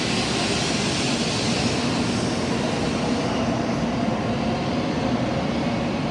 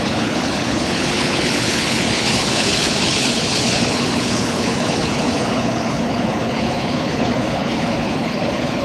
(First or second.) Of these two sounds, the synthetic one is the second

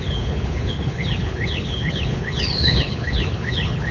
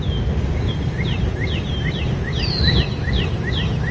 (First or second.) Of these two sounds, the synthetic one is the first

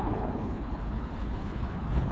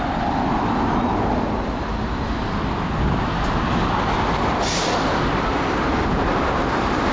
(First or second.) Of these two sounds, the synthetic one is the first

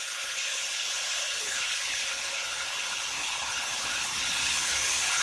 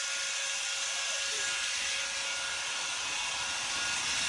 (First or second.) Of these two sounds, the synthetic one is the first